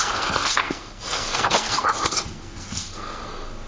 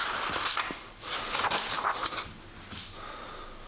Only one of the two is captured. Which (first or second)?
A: second